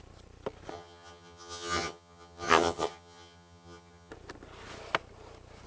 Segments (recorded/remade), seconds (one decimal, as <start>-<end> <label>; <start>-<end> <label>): 0.0-0.7 recorded; 0.7-4.1 remade; 4.1-5.7 recorded